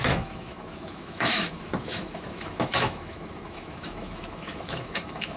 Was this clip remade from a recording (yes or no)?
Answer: yes